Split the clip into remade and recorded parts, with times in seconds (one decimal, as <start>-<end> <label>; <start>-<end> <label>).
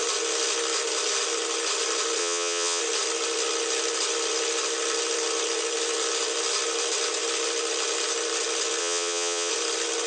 0.0-2.2 recorded; 2.2-2.8 remade; 2.8-8.8 recorded; 8.8-9.5 remade; 9.5-10.1 recorded